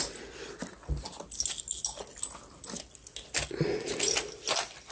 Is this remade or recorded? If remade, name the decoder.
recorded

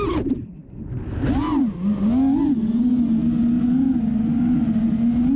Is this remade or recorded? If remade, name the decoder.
recorded